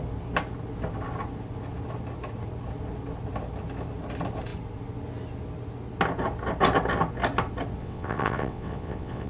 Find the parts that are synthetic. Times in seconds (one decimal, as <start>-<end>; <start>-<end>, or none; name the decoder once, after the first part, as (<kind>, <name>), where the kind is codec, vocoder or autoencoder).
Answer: 7.8-9.3 (vocoder, WaveNeXt)